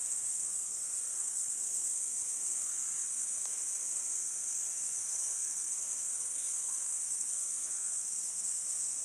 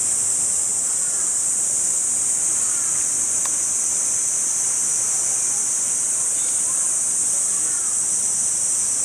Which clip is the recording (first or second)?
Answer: second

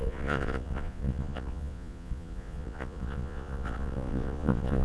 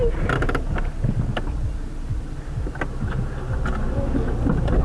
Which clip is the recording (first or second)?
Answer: second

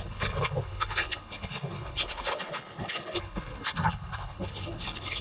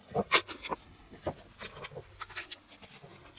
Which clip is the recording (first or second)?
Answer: second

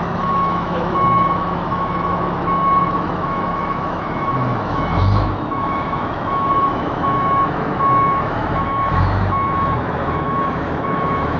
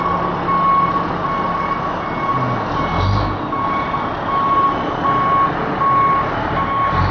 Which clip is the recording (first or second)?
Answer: second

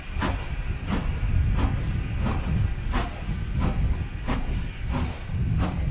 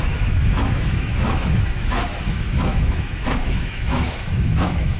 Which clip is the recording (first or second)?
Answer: first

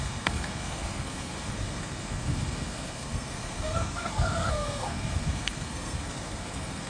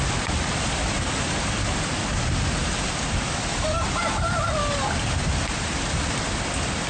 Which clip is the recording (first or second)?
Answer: second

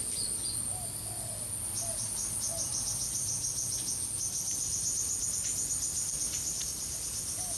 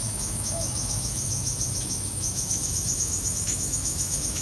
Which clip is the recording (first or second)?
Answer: first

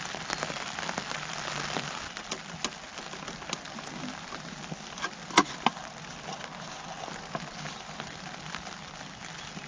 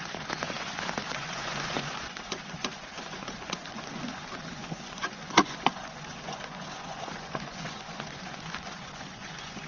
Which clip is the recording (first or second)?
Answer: first